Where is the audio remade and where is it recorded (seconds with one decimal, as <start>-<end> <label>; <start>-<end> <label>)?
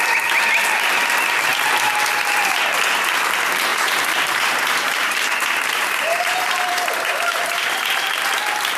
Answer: 0.0-3.7 recorded; 3.7-8.3 remade; 8.3-8.8 recorded